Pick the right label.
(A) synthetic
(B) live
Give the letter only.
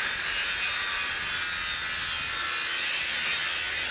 B